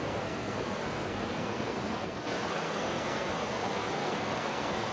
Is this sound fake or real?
fake